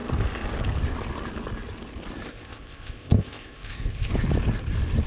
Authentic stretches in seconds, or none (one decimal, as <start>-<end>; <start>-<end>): 0.0-2.3; 4.1-5.1